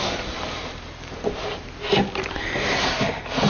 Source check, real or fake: real